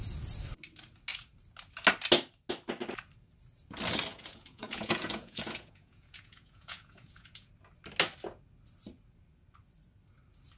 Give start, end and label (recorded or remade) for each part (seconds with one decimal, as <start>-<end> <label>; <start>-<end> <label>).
0.0-4.1 recorded; 4.1-7.5 remade; 7.5-10.6 recorded